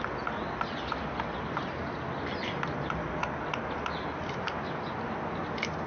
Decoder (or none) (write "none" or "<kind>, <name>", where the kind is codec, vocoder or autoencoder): none